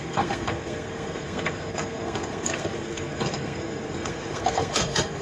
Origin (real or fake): fake